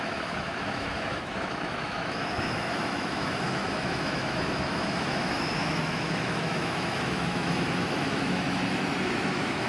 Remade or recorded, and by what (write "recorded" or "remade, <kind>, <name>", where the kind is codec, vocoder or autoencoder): remade, autoencoder, DAC-VAE